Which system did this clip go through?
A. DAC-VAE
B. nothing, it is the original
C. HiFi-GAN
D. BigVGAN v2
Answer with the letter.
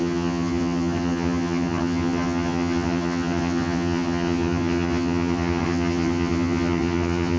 C